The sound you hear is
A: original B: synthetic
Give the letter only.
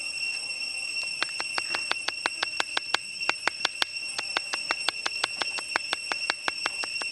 A